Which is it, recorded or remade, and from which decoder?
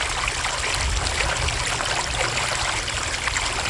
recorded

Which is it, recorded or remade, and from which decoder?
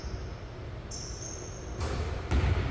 recorded